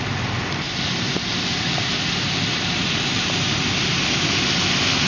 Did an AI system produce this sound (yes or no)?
no